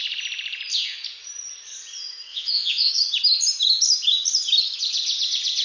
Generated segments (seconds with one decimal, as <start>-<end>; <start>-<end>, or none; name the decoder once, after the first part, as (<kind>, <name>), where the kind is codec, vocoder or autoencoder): 2.3-2.9 (vocoder, Vocos)